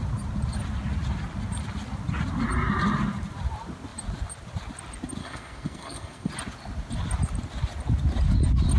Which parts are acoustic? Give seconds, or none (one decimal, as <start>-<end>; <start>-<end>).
0.0-5.2; 6.3-8.8